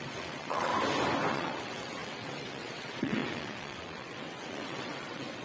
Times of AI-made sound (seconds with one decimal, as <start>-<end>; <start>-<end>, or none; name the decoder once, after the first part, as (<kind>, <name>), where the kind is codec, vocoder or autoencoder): 0.0-0.7 (vocoder, WaveNeXt); 1.3-5.4